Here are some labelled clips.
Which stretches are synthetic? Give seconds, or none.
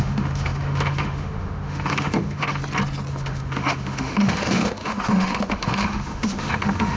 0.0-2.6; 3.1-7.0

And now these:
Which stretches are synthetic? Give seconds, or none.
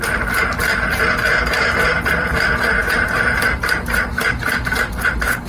none